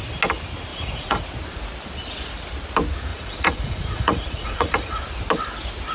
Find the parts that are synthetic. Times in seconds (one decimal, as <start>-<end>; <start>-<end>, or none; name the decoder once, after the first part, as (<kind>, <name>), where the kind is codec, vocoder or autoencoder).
0.7-1.2 (vocoder, Vocos); 3.1-5.0